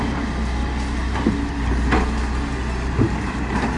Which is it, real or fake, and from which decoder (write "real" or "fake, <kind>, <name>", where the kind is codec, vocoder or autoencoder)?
real